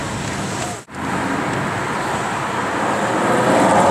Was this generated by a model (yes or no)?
no